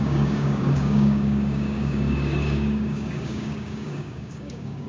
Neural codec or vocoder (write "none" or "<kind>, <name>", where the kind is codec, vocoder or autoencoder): codec, DAC